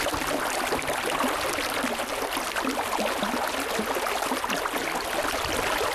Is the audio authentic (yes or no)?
yes